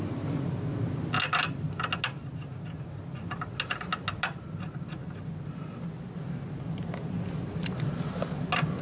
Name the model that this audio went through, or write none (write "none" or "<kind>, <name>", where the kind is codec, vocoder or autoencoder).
none